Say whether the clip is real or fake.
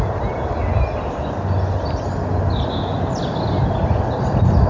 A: real